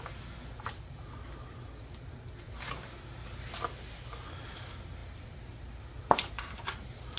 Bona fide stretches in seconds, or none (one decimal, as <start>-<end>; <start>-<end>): 0.0-5.0; 6.3-7.2